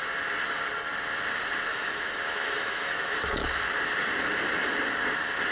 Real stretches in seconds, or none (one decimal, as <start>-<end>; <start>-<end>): 0.0-1.7; 3.4-5.5